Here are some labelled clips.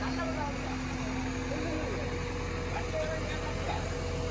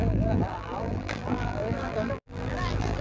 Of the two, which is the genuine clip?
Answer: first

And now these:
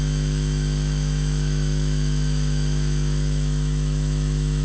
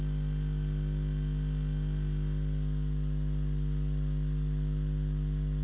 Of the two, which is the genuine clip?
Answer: second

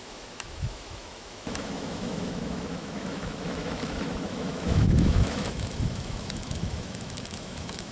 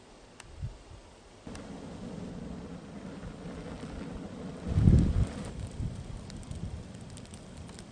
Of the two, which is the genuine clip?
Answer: second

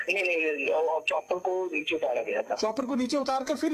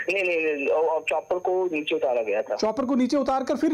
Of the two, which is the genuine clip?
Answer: second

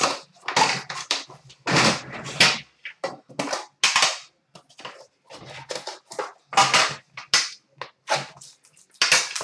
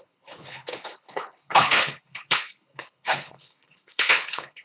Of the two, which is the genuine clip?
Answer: first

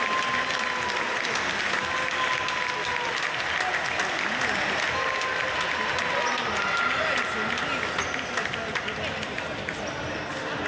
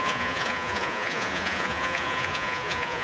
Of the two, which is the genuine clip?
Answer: first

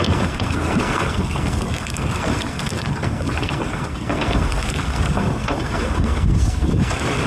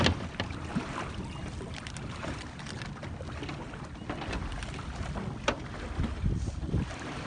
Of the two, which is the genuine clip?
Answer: second